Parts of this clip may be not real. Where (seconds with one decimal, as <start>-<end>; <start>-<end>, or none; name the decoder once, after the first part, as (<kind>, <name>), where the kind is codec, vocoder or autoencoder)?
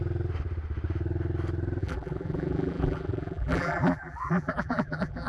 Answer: 1.8-5.3 (vocoder, BigVGAN v2)